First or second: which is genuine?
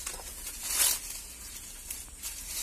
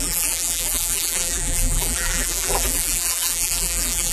first